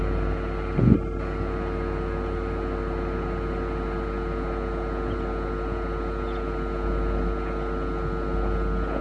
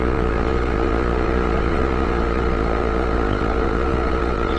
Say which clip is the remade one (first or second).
second